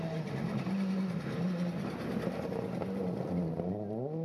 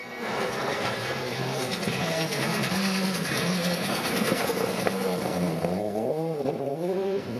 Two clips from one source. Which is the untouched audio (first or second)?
first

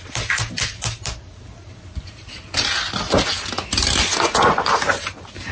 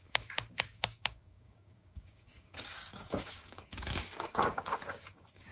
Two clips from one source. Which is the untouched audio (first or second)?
first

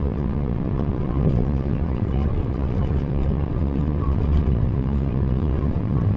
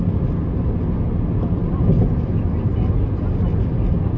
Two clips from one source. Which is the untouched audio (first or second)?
second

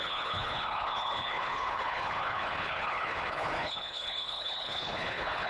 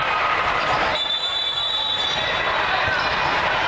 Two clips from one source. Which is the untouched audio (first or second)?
second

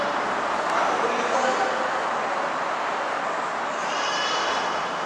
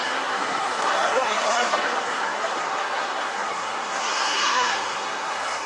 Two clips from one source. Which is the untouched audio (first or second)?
first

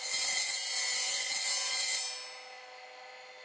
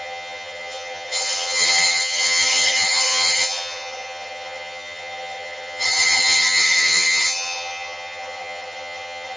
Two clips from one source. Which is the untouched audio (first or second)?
first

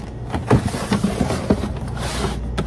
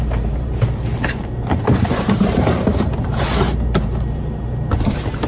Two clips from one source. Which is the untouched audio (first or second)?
first